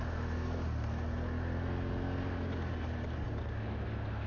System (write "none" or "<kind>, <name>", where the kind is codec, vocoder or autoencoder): none